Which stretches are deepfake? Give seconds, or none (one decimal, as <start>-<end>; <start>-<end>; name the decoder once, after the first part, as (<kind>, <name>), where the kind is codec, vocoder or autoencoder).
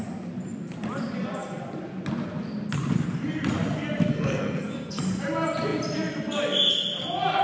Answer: 4.1-5.0 (codec, SNAC)